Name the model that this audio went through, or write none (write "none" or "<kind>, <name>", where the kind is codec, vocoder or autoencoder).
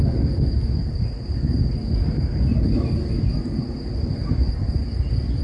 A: none